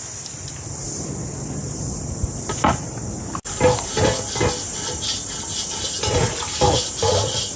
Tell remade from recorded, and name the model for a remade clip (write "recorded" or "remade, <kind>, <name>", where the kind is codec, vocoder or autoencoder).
recorded